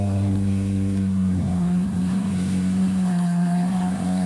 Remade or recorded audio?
remade